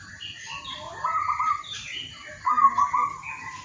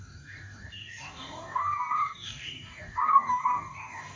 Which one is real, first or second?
first